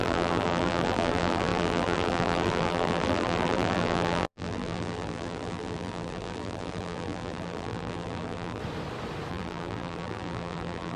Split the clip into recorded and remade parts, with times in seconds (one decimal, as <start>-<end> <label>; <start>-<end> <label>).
0.0-8.6 remade; 8.6-9.3 recorded; 9.3-11.0 remade

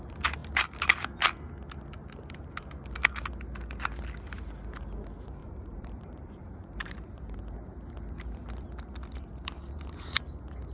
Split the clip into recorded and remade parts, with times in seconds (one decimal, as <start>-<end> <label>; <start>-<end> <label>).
0.0-5.4 recorded; 5.4-7.4 remade; 7.4-10.7 recorded

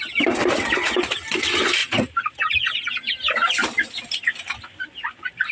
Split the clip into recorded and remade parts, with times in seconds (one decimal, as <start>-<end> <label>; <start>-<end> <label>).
0.0-1.8 recorded; 1.8-2.5 remade; 2.5-5.5 recorded

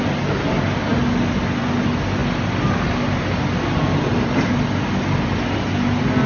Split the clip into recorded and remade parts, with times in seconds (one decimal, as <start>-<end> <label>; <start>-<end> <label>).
0.0-6.3 recorded

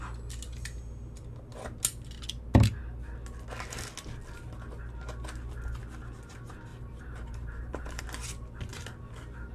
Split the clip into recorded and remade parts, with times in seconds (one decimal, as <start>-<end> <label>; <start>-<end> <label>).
0.0-6.7 recorded; 6.7-8.0 remade; 8.0-9.5 recorded

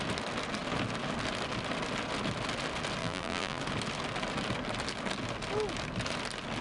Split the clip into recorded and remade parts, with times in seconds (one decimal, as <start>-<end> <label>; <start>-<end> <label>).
0.0-3.0 recorded; 3.0-3.6 remade; 3.6-6.6 recorded

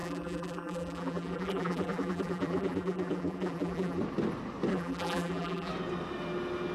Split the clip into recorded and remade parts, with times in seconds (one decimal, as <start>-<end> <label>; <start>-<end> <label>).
0.0-4.0 remade; 4.0-4.7 recorded; 4.7-5.7 remade; 5.7-6.7 recorded

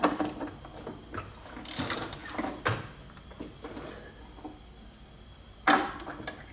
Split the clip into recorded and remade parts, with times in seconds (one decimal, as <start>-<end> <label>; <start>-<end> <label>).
0.0-6.5 recorded